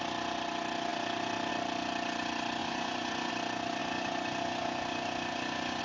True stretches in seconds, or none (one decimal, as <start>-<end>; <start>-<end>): 0.0-2.6; 3.3-3.8